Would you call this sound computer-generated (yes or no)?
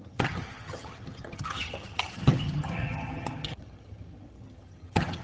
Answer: yes